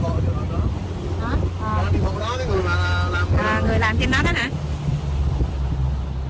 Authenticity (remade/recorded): recorded